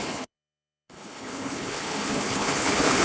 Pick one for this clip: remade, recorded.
remade